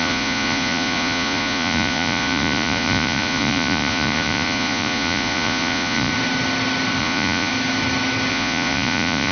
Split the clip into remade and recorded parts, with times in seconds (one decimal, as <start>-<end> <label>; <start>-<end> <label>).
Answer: 0.0-6.1 remade; 6.1-7.0 recorded; 7.0-7.5 remade; 7.5-8.3 recorded; 8.3-9.3 remade